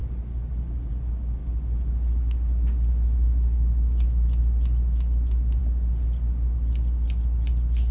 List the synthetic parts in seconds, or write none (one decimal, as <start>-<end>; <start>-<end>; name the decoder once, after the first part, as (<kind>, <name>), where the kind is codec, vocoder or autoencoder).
none